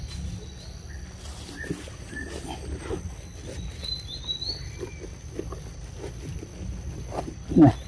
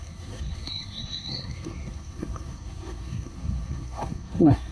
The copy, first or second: second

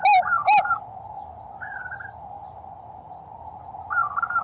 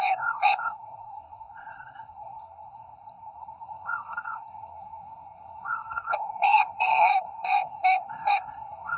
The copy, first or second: second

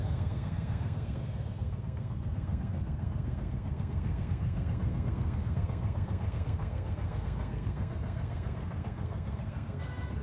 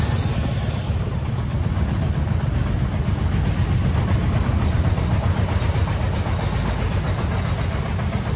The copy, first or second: first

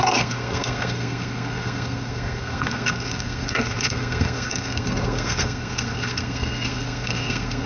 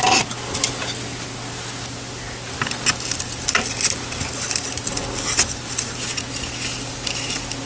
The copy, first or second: first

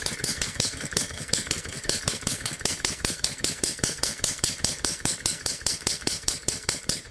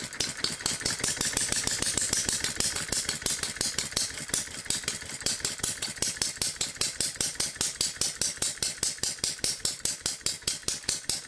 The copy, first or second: first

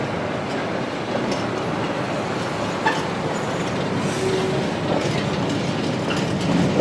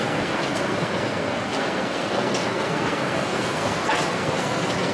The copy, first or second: second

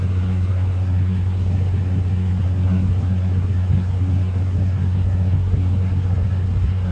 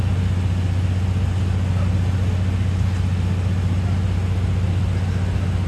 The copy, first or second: first